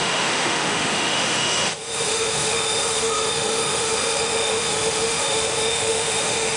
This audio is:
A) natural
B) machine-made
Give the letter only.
B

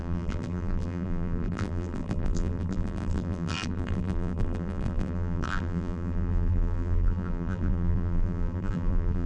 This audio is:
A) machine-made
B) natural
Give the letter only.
A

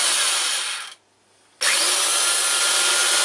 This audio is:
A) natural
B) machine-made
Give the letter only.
A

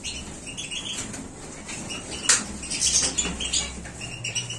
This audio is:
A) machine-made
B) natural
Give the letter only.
B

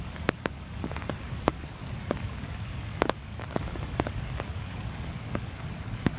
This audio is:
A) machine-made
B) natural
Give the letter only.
A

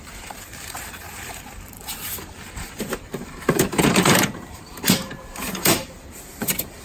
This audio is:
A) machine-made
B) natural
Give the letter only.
A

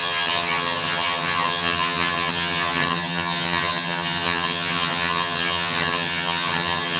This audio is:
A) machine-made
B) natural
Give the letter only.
A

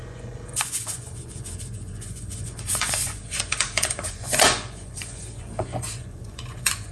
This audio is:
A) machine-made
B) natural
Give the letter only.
A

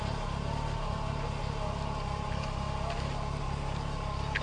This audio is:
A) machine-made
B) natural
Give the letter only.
B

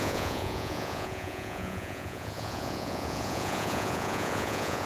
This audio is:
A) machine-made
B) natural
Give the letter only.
A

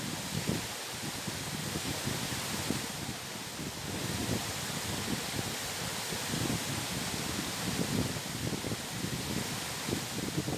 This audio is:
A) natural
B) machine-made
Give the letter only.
A